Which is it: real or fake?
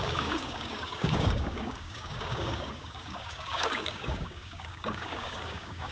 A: fake